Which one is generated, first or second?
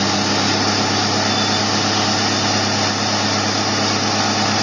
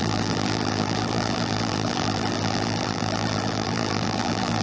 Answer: second